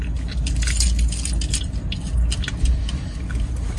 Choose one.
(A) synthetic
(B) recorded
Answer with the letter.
B